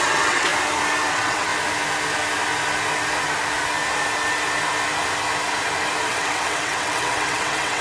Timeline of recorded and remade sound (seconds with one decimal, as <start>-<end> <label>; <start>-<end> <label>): 0.0-0.5 remade; 0.5-1.1 recorded; 1.1-1.5 remade; 1.5-6.1 recorded; 6.1-7.8 remade